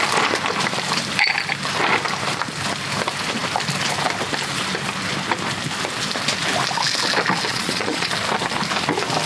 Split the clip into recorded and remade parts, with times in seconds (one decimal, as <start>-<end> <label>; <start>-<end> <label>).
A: 0.0-7.5 recorded; 7.5-8.1 remade; 8.1-9.3 recorded